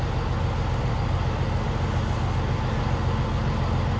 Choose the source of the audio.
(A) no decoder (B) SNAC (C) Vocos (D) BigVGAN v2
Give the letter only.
A